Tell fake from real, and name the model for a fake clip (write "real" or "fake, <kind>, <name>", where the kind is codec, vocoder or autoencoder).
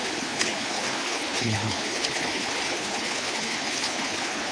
fake, codec, HILCodec